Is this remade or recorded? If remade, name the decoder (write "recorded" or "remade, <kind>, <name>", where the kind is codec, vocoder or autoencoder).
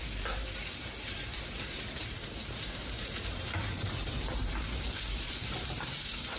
remade, vocoder, BigVGAN v2